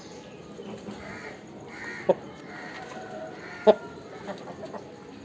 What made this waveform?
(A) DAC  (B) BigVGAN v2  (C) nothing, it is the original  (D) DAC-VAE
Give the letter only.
C